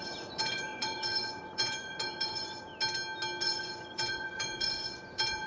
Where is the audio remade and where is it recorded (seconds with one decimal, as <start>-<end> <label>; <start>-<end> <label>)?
0.0-2.7 remade; 2.7-3.4 recorded; 3.4-5.5 remade